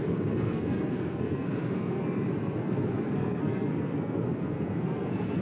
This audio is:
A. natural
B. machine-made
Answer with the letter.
B